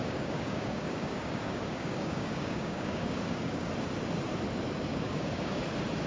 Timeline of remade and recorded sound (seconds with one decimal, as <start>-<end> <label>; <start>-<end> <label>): 0.0-3.7 remade; 3.7-4.9 recorded; 4.9-5.6 remade; 5.6-6.1 recorded